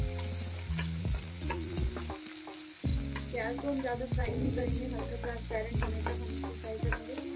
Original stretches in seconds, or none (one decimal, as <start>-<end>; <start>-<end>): 0.0-1.0; 1.9-4.2; 4.8-7.4